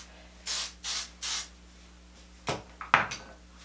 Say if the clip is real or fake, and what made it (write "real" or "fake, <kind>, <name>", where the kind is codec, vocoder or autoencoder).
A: real